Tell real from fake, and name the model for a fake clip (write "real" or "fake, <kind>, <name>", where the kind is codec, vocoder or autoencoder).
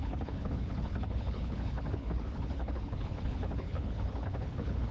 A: fake, codec, HILCodec